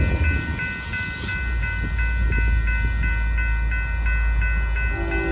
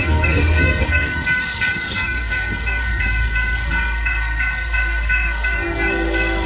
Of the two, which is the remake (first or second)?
second